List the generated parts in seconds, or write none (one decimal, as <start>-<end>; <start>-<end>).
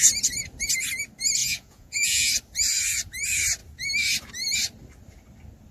1.4-2.3